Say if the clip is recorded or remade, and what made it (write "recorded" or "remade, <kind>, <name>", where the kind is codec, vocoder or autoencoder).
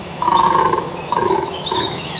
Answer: remade, autoencoder, DAC-VAE